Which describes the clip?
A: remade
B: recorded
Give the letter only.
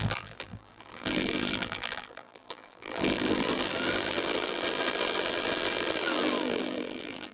A